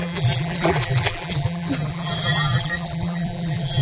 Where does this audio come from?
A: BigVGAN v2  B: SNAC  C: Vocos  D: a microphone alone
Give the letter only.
A